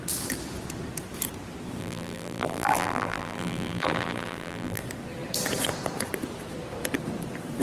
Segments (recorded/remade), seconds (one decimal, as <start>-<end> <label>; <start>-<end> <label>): 0.0-1.8 recorded; 1.8-4.8 remade; 4.8-7.6 recorded